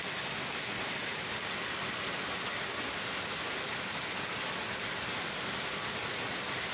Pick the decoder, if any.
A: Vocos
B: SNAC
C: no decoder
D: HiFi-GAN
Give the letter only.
C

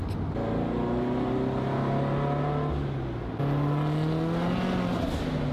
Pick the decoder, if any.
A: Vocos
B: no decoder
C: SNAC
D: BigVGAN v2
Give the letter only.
B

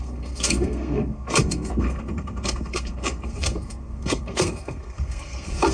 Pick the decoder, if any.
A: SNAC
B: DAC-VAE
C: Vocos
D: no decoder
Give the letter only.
A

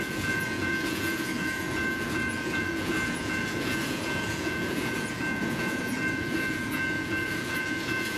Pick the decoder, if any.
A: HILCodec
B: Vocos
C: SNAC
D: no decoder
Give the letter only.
B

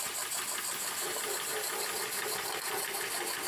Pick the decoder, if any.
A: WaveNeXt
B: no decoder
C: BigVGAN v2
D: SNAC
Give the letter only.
B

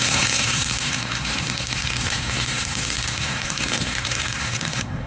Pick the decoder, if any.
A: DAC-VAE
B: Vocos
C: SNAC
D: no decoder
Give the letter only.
C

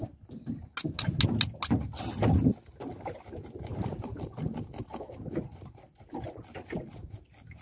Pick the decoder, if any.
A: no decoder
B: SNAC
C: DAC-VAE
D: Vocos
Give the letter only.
A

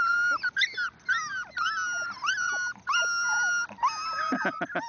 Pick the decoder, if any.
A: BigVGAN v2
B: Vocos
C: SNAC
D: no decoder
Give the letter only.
D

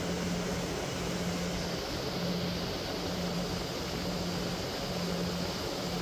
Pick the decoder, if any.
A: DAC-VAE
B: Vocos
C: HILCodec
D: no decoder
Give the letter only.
D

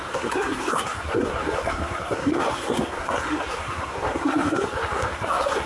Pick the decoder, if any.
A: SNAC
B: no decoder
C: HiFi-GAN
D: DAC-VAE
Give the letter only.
A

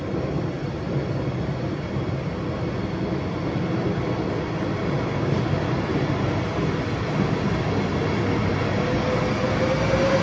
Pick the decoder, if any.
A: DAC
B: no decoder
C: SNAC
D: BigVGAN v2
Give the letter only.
B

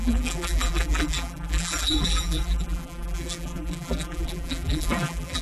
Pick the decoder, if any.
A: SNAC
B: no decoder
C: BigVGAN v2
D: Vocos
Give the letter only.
C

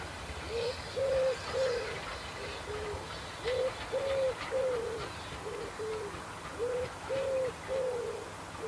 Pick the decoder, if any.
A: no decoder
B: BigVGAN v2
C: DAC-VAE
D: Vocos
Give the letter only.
A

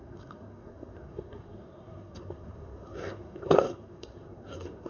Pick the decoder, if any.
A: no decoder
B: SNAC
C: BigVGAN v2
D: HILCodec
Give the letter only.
B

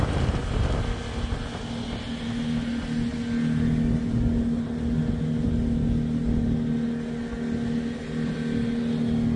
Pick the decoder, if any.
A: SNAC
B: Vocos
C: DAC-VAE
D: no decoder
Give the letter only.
D